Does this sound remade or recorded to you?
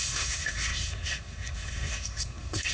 remade